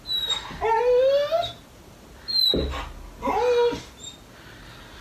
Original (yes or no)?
yes